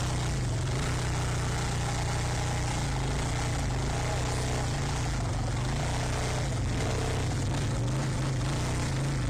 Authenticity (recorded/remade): recorded